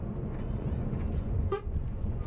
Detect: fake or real fake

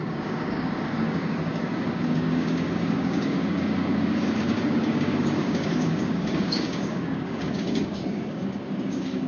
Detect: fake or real fake